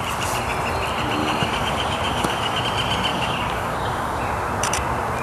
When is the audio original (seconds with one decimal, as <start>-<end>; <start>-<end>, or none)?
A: 0.0-1.2; 2.6-3.1; 4.2-5.2